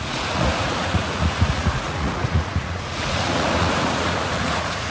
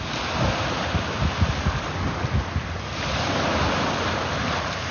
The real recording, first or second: second